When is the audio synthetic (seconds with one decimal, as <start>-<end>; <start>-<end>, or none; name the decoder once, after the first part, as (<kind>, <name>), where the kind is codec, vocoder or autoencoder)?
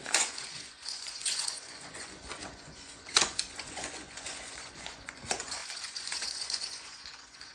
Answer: 0.0-7.5 (vocoder, Vocos)